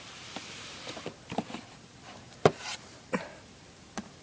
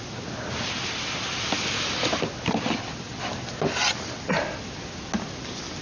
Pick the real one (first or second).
second